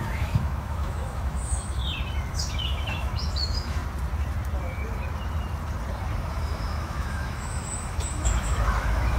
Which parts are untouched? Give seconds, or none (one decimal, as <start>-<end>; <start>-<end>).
1.8-2.3; 3.8-6.3